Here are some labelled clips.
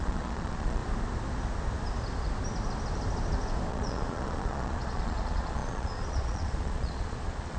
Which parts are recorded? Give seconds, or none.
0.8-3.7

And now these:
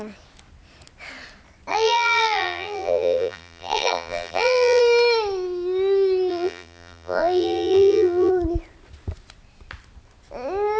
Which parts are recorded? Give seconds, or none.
0.0-1.7; 4.8-6.3; 8.3-10.8

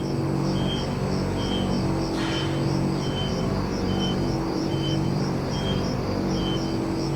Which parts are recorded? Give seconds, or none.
0.0-3.3; 6.4-7.2

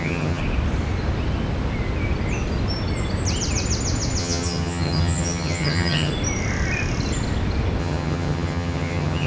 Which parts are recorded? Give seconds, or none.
0.4-4.2; 6.1-7.8